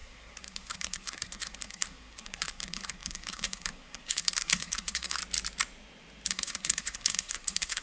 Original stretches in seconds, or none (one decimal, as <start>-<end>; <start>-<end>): 5.2-6.3